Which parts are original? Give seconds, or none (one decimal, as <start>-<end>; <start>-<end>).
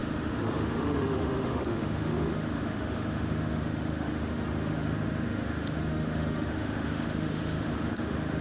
none